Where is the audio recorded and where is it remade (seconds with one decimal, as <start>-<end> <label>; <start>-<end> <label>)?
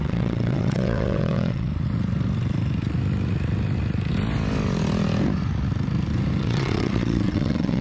0.0-1.7 remade; 1.7-6.4 recorded; 6.4-7.8 remade